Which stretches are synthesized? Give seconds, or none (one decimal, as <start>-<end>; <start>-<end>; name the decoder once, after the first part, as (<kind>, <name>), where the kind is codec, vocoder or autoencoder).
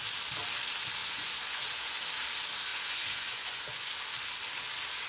1.0-2.0 (vocoder, Vocos); 2.7-3.9